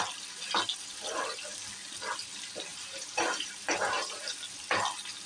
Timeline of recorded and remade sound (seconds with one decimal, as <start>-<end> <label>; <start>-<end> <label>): 0.0-2.7 recorded; 2.7-4.3 remade; 4.3-5.3 recorded